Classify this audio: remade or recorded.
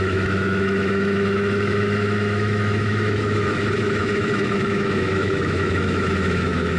remade